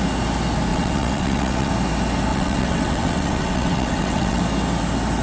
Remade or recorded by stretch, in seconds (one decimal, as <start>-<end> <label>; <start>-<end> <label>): 0.0-0.7 recorded; 0.7-1.7 remade; 1.7-2.3 recorded; 2.3-4.4 remade; 4.4-5.2 recorded